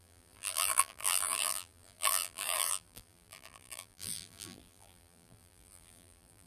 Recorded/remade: remade